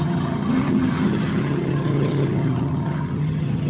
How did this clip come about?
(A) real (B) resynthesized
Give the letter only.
B